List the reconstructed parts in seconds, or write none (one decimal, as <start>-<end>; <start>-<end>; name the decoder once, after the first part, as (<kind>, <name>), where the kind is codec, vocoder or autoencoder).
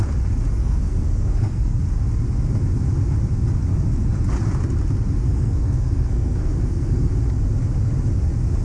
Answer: 0.6-1.8 (codec, SNAC); 5.2-7.1